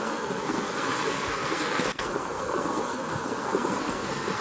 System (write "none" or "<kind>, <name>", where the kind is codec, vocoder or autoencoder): codec, SNAC